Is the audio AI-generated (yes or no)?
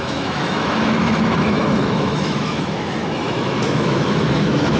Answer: yes